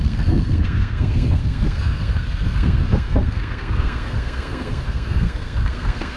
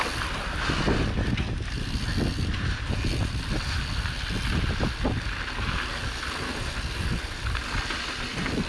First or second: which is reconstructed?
first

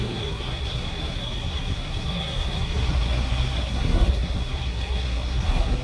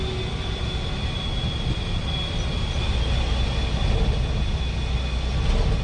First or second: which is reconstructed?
first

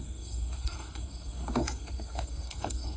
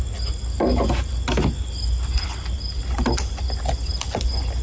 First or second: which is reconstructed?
first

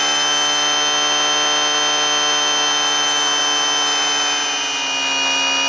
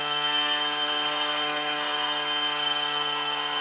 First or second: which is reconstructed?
second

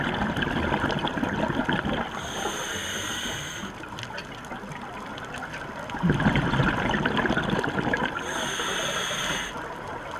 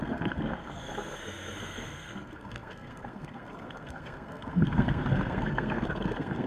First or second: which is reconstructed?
second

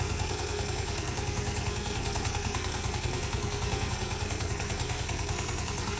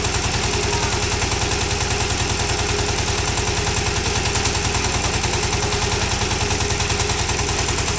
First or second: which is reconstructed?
first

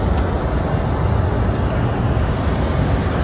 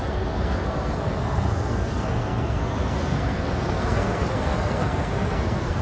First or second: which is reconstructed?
second